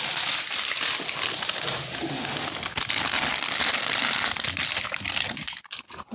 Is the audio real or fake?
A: real